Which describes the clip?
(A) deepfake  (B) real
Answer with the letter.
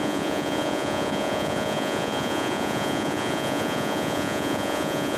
A